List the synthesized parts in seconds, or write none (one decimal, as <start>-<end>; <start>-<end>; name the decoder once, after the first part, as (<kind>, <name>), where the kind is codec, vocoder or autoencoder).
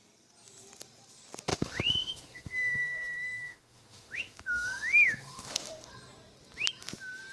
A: 1.5-5.9 (autoencoder, DAC-VAE)